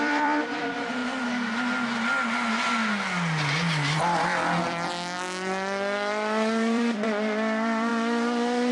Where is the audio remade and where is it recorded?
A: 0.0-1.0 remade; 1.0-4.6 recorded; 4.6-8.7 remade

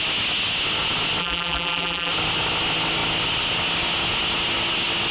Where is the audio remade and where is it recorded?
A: 0.0-1.2 recorded; 1.2-2.1 remade; 2.1-5.1 recorded